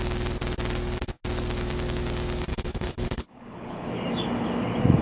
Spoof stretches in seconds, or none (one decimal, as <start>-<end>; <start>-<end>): 2.5-3.9